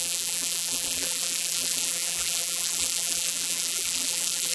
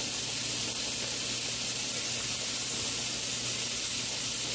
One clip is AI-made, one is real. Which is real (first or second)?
second